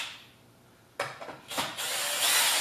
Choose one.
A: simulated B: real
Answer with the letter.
B